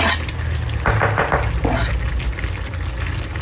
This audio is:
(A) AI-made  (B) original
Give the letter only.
B